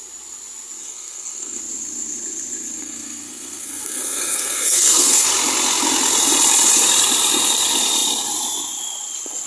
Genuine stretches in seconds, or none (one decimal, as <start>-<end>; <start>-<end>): 0.0-0.8; 1.6-2.8; 5.3-9.5